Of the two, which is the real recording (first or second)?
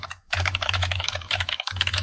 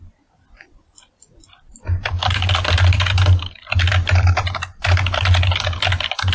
second